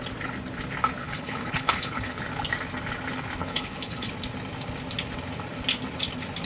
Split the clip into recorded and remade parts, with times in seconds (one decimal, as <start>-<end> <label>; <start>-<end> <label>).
0.0-1.0 recorded; 1.0-2.2 remade; 2.2-3.4 recorded; 3.4-4.1 remade; 4.1-6.4 recorded